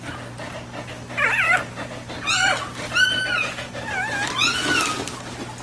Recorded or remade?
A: recorded